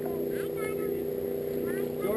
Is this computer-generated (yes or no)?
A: no